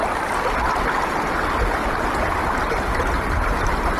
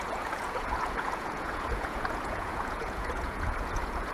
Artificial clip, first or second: second